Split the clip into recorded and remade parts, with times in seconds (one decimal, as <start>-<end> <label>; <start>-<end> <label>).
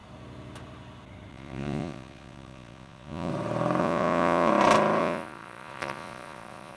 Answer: 0.0-1.3 recorded; 1.3-3.3 remade; 3.3-3.8 recorded; 3.8-4.5 remade; 4.5-5.0 recorded; 5.0-6.8 remade